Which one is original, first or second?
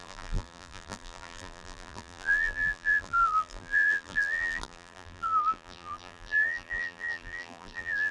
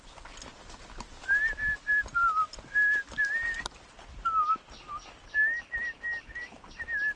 second